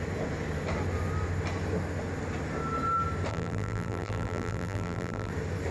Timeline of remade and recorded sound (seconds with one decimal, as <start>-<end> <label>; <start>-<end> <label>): 0.0-3.3 recorded; 3.3-5.3 remade; 5.3-5.7 recorded